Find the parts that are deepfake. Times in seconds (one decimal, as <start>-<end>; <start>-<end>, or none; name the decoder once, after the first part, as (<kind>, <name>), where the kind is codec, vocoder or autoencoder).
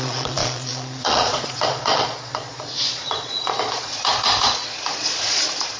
0.0-5.8 (vocoder, Vocos)